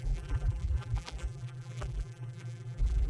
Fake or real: fake